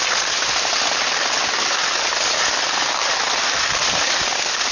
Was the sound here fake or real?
real